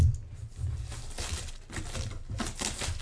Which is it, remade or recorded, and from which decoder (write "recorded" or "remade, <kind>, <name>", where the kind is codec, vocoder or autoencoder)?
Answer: recorded